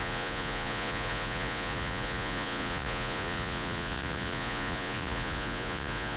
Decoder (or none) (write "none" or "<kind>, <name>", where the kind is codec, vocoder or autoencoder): vocoder, Vocos